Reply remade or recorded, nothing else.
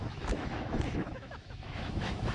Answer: remade